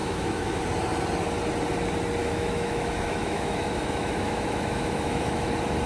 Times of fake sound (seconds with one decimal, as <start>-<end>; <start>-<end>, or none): 0.0-0.6; 2.2-5.5